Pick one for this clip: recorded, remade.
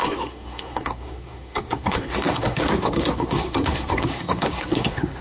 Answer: remade